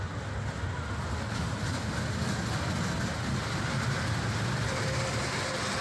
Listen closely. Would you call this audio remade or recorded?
recorded